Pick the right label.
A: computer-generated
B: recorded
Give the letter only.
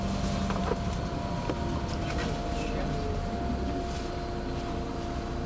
B